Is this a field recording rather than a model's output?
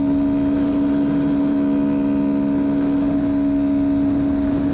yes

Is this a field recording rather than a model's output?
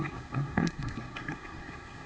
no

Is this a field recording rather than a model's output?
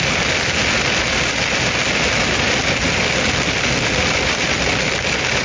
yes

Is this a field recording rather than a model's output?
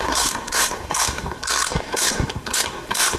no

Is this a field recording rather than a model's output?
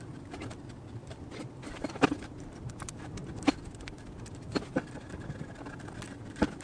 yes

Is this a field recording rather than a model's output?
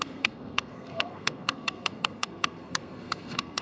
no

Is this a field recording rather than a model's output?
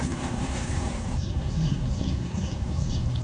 no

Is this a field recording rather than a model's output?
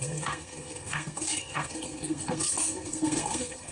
no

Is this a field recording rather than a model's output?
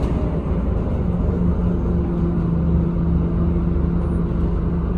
yes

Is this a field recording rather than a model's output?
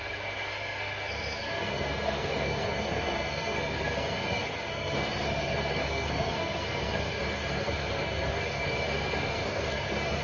no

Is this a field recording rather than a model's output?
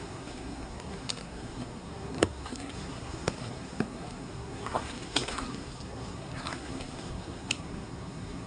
no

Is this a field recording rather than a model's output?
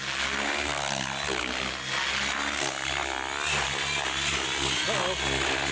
yes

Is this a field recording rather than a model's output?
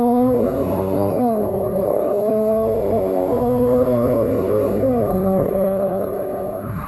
no